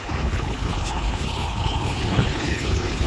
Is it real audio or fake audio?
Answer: fake